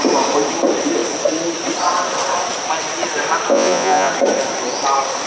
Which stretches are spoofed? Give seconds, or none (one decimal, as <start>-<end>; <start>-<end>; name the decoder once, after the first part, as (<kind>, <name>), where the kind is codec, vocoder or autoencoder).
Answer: 3.5-4.1 (vocoder, Vocos)